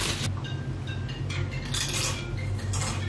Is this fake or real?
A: real